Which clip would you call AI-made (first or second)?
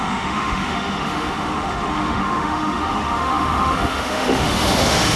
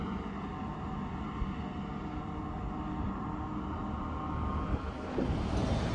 first